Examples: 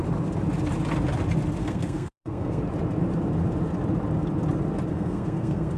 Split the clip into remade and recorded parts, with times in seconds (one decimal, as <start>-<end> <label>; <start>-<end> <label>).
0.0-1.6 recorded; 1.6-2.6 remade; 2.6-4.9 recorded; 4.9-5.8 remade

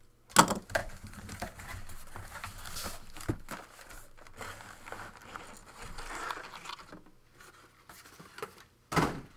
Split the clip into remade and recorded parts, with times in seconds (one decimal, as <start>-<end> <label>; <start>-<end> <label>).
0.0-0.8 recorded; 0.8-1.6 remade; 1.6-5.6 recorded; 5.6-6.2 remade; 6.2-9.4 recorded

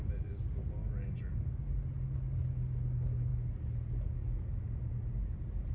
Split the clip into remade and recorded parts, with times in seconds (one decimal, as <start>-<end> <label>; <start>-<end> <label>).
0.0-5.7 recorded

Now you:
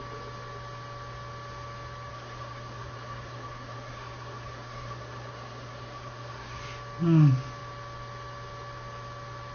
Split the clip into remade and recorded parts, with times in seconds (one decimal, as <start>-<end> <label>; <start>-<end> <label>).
0.0-2.1 recorded; 2.1-6.6 remade; 6.6-9.5 recorded

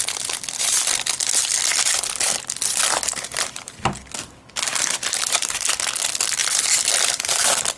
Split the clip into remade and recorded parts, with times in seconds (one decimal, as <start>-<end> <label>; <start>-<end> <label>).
0.0-1.4 remade; 1.4-4.5 recorded; 4.5-6.4 remade; 6.4-7.0 recorded; 7.0-7.8 remade

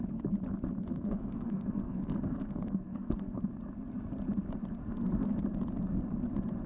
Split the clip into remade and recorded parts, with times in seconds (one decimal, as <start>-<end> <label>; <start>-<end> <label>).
0.0-0.9 recorded; 0.9-3.4 remade; 3.4-4.8 recorded; 4.8-5.3 remade; 5.3-6.7 recorded